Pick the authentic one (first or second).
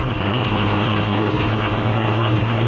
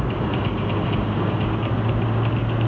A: second